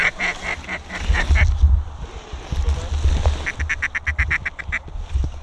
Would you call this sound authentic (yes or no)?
yes